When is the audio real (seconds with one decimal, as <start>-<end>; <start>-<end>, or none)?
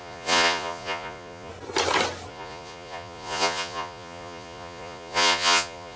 1.5-2.3